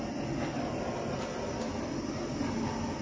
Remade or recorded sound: recorded